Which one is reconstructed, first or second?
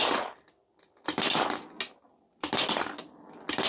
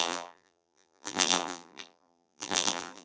second